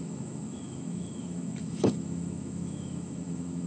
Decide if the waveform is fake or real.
fake